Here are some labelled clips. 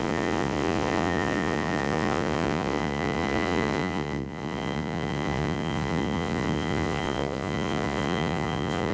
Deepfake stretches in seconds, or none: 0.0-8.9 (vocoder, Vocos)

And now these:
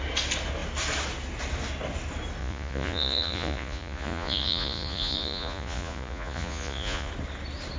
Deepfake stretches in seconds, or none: 2.4-7.1 (vocoder, Vocos)